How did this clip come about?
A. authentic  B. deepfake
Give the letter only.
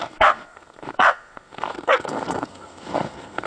B